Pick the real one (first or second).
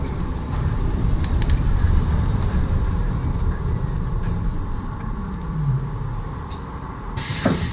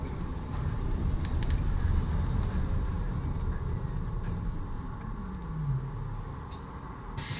second